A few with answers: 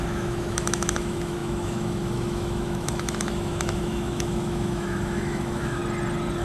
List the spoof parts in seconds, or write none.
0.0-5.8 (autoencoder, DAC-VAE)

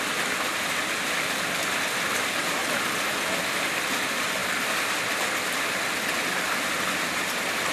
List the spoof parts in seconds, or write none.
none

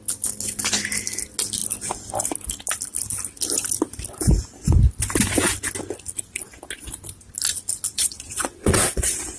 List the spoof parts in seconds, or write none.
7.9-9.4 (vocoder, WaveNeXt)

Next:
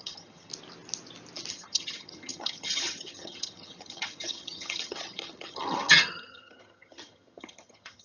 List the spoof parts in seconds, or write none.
0.0-0.5 (vocoder, HiFi-GAN); 1.5-8.0

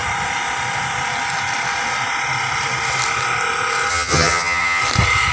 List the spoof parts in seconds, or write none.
3.9-4.8 (vocoder, HiFi-GAN)

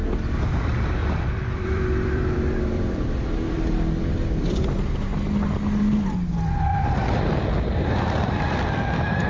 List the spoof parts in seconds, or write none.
1.0-4.7 (vocoder, BigVGAN v2); 6.7-7.9

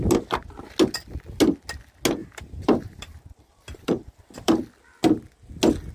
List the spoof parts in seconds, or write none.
2.2-4.6 (vocoder, BigVGAN v2)